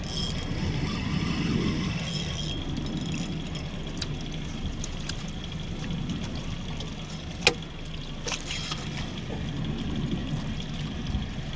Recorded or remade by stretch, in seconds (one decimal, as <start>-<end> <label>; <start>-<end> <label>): 0.0-11.6 recorded